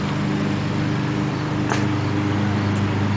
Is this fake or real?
real